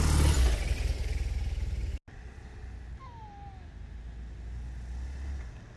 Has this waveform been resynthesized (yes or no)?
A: no